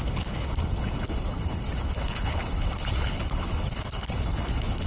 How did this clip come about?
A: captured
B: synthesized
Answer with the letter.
B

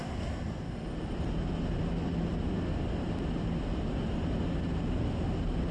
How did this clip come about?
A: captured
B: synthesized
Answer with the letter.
A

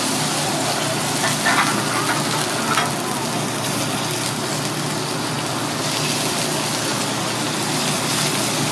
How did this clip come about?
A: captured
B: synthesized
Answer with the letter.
A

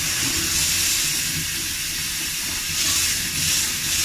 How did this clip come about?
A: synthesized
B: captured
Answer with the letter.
B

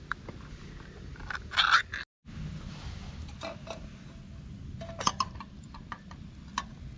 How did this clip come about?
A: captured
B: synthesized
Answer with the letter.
A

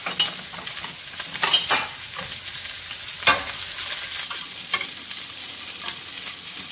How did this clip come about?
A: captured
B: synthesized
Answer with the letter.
A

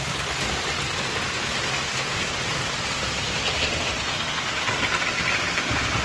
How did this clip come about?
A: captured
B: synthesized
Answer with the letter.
A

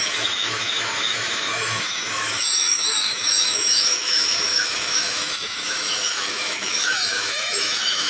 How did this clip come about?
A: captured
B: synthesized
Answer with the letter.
B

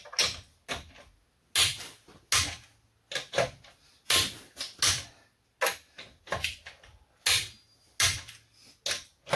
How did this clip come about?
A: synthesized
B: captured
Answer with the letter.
B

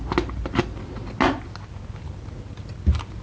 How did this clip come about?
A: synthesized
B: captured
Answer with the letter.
B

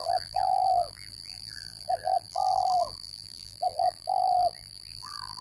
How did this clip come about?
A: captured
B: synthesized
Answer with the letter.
B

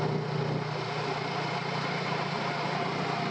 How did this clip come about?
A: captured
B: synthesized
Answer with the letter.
A